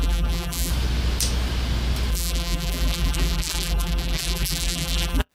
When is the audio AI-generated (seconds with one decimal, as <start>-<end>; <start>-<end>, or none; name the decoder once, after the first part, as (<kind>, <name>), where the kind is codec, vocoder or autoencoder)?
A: 0.0-0.7 (vocoder, BigVGAN v2); 2.1-5.3